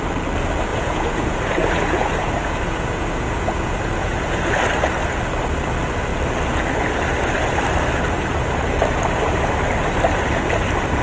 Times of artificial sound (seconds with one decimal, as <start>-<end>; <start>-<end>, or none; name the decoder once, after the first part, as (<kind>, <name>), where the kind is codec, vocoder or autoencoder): 0.7-4.5 (vocoder, Vocos)